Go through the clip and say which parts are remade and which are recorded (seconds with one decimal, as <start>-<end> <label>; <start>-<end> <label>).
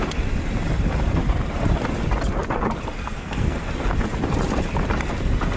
0.0-3.0 recorded; 3.0-3.7 remade; 3.7-5.6 recorded